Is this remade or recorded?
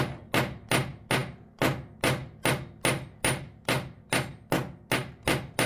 recorded